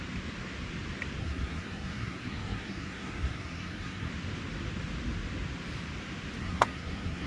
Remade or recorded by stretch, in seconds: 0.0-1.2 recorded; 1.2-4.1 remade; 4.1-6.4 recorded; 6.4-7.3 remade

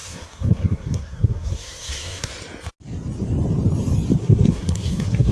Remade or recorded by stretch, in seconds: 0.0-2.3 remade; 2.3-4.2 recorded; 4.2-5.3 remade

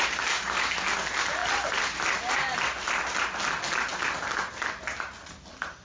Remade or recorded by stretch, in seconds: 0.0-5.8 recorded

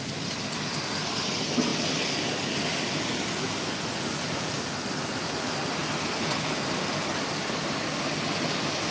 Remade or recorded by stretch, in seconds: 0.0-8.9 recorded